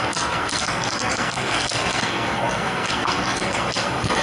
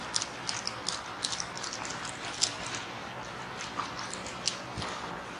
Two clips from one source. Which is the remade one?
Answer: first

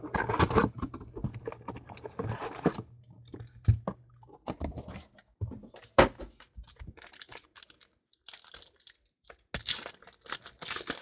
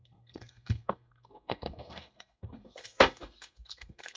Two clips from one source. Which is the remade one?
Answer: second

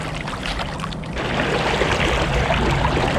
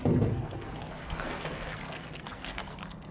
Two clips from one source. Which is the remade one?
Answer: second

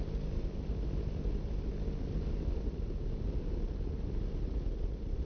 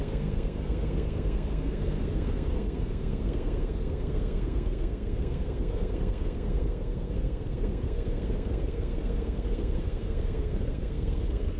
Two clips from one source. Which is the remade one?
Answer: second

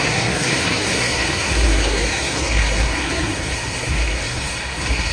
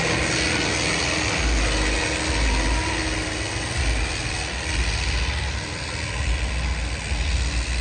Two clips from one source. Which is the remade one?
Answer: first